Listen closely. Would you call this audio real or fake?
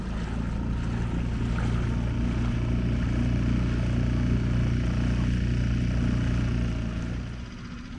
real